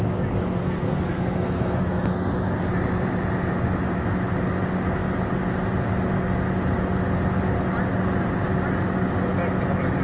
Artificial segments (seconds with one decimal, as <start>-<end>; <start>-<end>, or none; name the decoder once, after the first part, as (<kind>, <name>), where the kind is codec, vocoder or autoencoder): 0.6-2.3 (codec, SNAC)